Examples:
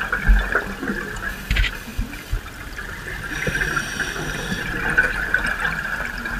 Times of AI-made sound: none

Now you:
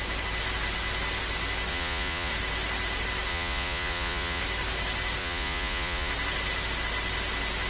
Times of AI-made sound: 1.7-2.3 (vocoder, Vocos); 3.3-4.4; 5.2-6.1

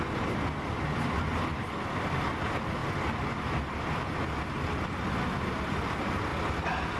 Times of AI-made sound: none

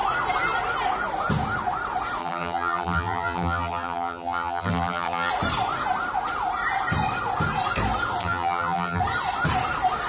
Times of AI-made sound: 2.2-5.3 (vocoder, BigVGAN v2); 8.2-9.0